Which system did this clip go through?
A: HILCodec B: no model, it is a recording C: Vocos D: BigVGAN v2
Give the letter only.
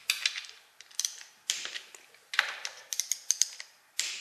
B